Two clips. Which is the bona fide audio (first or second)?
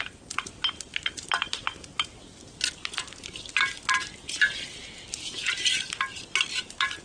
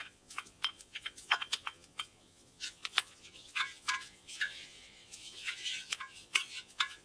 first